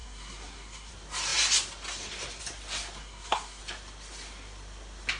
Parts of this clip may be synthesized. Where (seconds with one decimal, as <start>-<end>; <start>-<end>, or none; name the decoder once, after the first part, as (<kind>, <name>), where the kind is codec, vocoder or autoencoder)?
0.0-0.9 (codec, SNAC); 3.0-3.6